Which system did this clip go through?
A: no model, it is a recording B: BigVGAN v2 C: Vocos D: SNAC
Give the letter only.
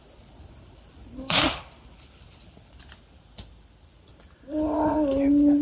B